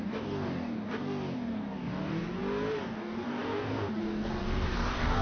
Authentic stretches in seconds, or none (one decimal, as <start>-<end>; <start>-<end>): 2.2-2.8